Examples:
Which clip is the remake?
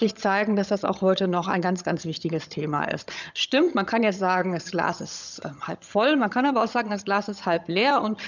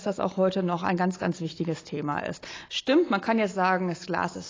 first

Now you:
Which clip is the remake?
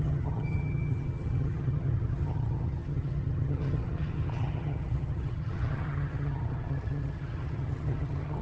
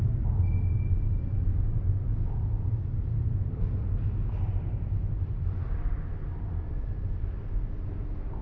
first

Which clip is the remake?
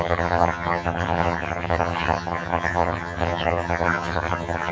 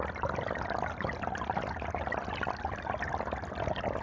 first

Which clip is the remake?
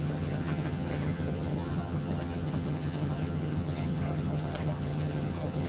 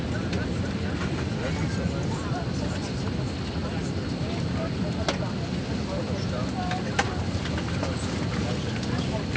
first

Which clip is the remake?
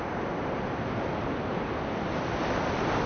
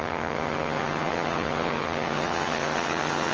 second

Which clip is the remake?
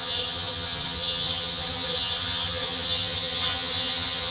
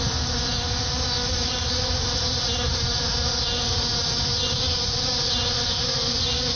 first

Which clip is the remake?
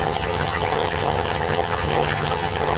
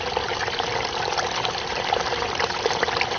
first